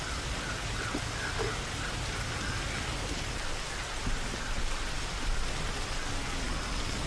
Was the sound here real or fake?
real